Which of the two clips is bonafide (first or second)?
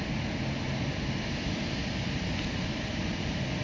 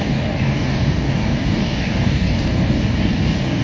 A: first